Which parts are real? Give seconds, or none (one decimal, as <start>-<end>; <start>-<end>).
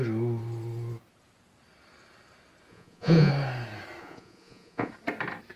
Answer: 0.0-2.7; 3.3-4.0; 4.9-5.6